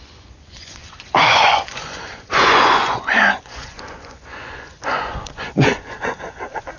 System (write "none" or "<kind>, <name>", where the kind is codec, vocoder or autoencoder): vocoder, Vocos